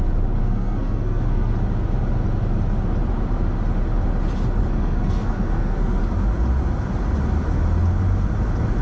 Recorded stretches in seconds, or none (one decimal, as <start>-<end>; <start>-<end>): 0.0-0.4; 1.5-4.6; 6.0-8.8